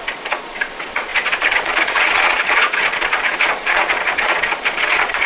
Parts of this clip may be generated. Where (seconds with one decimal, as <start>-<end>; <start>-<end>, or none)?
0.0-5.3